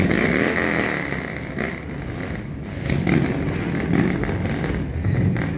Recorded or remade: recorded